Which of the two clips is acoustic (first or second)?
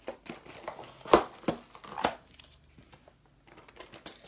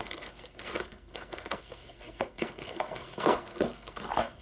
first